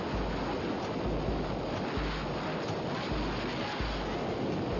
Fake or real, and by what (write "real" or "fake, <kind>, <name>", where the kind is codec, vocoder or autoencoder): real